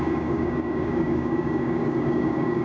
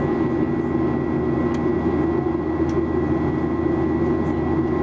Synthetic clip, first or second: first